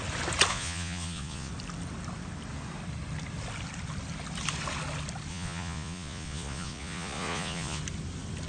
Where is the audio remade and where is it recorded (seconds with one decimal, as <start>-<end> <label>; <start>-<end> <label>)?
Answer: 0.0-0.5 recorded; 0.5-1.5 remade; 1.5-5.3 recorded; 5.3-7.8 remade; 7.8-8.5 recorded